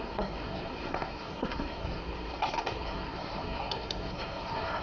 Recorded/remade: remade